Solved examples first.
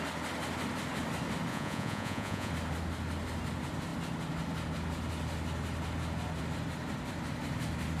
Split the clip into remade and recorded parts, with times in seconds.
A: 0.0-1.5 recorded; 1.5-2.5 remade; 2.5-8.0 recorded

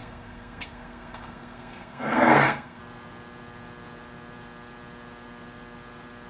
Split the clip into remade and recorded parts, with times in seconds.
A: 0.0-2.8 remade; 2.8-6.3 recorded

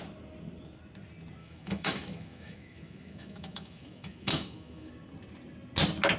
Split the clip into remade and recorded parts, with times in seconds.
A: 0.0-1.4 recorded; 1.4-4.9 remade; 4.9-6.2 recorded

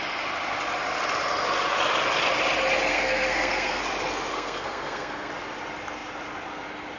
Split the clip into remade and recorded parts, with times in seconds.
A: 0.0-2.9 recorded; 2.9-3.8 remade; 3.8-4.3 recorded; 4.3-5.3 remade; 5.3-7.0 recorded

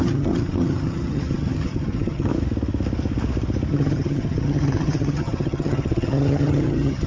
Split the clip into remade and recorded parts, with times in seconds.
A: 0.0-2.3 remade; 2.3-3.7 recorded; 3.7-7.1 remade

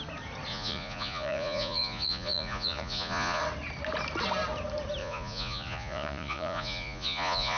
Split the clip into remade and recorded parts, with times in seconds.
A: 0.0-0.5 recorded; 0.5-3.4 remade; 3.4-5.0 recorded; 5.0-7.6 remade

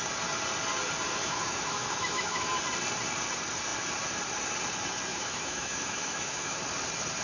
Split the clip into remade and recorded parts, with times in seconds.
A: 0.0-1.2 recorded; 1.2-2.6 remade; 2.6-5.1 recorded; 5.1-6.6 remade; 6.6-7.2 recorded